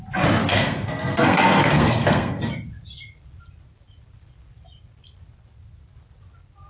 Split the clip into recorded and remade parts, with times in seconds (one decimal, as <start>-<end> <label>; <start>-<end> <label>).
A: 0.0-0.5 recorded; 0.5-2.5 remade; 2.5-6.7 recorded

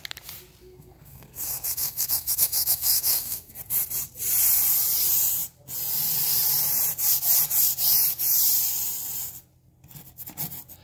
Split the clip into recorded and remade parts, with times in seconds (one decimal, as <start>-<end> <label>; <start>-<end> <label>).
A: 0.0-0.6 recorded; 0.6-3.6 remade; 3.6-10.8 recorded

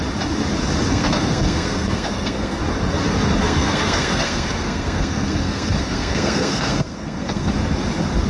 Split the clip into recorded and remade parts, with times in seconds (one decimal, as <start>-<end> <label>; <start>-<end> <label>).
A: 0.0-0.9 recorded; 0.9-2.6 remade; 2.6-3.4 recorded; 3.4-7.5 remade; 7.5-8.3 recorded

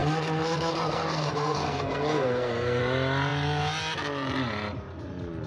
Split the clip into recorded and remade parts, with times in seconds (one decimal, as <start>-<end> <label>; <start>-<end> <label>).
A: 0.0-2.8 remade; 2.8-5.5 recorded

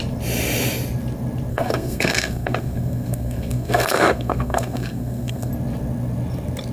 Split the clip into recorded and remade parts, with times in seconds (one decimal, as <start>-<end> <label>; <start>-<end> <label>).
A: 0.0-1.5 recorded; 1.5-5.5 remade; 5.5-6.7 recorded

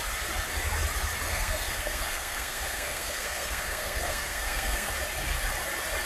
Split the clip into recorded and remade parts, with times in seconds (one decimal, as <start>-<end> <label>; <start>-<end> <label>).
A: 0.0-1.3 recorded; 1.3-4.9 remade; 4.9-6.1 recorded